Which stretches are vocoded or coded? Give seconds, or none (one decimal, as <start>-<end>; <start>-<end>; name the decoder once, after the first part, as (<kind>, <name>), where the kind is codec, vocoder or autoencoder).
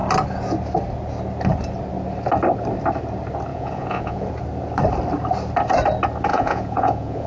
3.5-4.3 (vocoder, Vocos); 6.3-7.3